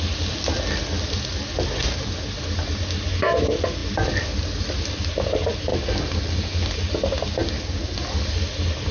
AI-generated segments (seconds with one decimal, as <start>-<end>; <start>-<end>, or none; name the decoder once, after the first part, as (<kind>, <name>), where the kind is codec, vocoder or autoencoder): none